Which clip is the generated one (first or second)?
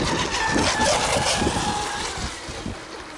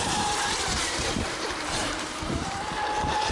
second